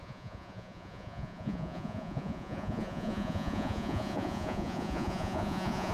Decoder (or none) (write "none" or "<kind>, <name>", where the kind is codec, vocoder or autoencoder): vocoder, Vocos